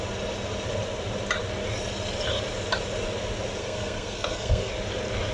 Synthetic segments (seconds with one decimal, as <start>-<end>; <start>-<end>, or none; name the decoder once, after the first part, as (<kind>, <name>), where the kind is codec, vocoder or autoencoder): 3.6-4.7 (codec, SNAC)